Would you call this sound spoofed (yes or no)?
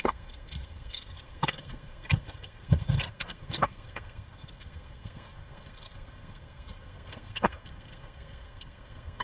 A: yes